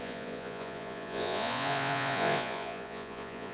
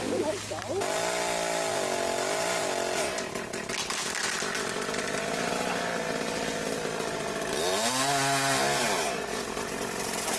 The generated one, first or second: first